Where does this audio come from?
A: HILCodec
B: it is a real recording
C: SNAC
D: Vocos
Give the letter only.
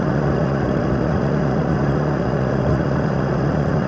D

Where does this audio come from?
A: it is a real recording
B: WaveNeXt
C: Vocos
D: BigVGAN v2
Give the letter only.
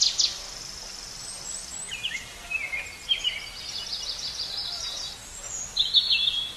A